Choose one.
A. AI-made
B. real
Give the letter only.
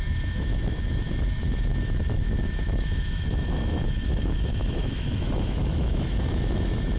A